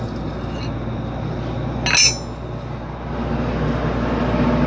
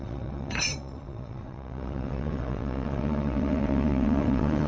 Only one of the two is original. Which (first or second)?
first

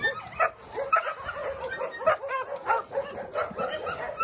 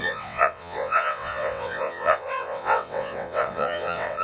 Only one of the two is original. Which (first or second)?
first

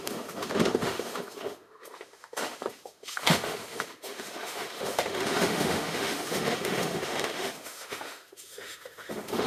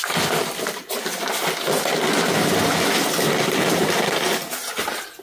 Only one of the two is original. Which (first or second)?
second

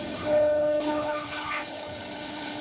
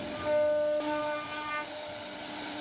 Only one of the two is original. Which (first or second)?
second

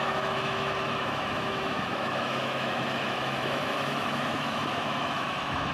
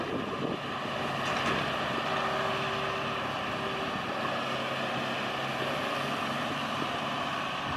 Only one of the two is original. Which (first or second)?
second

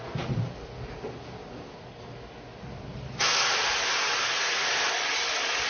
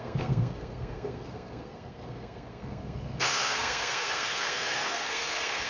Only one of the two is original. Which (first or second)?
first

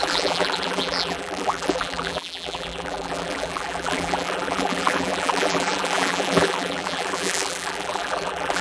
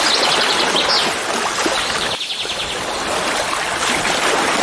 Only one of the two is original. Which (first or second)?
second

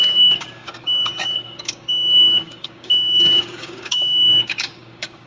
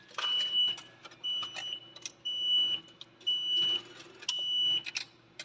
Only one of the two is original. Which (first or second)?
second